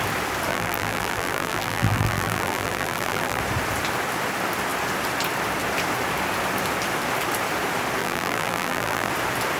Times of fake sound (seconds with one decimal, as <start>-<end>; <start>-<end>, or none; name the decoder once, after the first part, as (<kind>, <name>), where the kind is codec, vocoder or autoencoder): 0.5-3.4 (vocoder, BigVGAN v2); 8.0-9.1

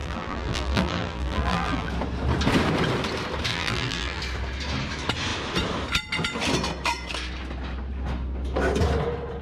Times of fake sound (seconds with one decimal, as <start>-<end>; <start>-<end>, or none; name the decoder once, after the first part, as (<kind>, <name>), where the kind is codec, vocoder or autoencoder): 0.0-1.9 (vocoder, BigVGAN v2); 3.5-4.2

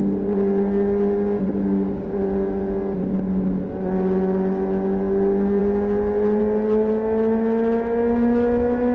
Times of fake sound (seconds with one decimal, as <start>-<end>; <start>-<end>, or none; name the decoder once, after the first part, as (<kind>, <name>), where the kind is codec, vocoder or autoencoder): none

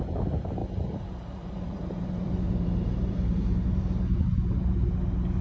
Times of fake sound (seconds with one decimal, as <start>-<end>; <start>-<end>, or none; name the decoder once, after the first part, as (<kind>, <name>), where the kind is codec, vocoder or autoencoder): 0.6-3.8 (vocoder, BigVGAN v2)

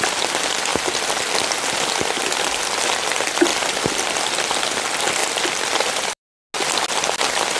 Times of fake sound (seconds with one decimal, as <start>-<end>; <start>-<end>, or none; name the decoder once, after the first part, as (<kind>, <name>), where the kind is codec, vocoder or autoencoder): 3.5-4.6 (vocoder, BigVGAN v2); 5.2-6.2

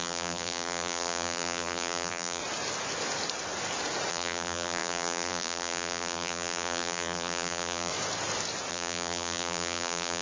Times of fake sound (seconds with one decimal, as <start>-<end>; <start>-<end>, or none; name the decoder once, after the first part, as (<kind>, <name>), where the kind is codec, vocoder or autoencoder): 0.0-2.4 (vocoder, BigVGAN v2); 4.1-7.9; 8.7-10.2

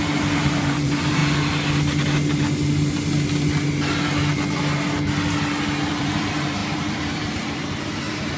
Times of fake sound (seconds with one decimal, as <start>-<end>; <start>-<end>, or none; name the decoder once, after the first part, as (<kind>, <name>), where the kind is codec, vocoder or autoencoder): 0.0-1.2 (vocoder, BigVGAN v2); 6.0-8.4